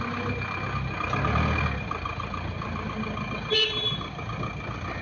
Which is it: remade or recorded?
recorded